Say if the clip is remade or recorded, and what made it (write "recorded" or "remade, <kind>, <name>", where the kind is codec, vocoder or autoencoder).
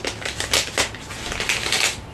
recorded